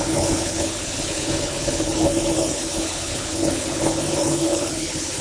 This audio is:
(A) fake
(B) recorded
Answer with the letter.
A